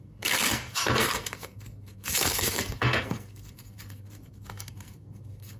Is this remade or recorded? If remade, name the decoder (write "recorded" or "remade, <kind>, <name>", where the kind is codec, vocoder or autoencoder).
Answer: remade, codec, SNAC